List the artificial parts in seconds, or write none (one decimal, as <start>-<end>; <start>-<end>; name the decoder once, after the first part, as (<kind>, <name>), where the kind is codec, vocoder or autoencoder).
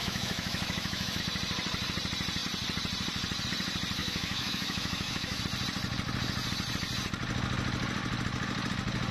0.0-1.2 (autoencoder, DAC-VAE); 4.0-5.4